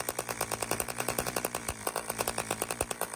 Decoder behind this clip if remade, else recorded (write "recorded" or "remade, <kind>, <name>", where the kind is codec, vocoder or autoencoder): recorded